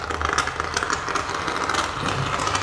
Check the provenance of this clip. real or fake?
real